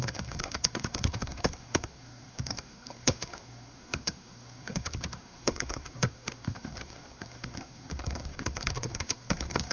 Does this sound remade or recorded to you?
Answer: remade